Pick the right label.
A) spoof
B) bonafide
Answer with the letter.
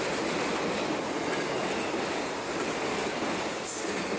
B